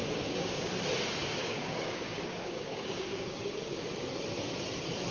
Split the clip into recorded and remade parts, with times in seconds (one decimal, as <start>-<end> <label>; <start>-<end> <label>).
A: 0.0-0.7 remade; 0.7-1.4 recorded; 1.4-3.9 remade; 3.9-5.1 recorded